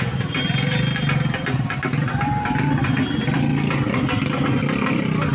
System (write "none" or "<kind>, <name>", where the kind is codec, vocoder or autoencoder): none